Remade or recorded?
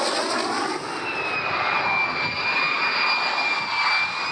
recorded